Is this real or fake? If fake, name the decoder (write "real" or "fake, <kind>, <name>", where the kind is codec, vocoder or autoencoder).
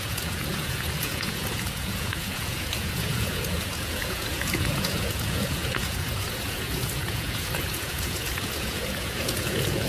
fake, vocoder, Vocos